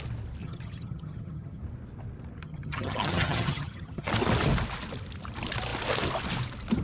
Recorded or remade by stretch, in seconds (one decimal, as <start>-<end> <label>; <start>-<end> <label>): 0.0-0.4 recorded; 0.4-1.6 remade; 1.6-2.4 recorded; 2.4-4.1 remade; 4.1-6.8 recorded